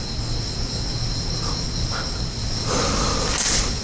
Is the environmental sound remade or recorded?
recorded